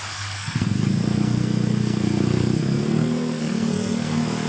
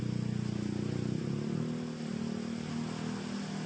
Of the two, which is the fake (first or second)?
first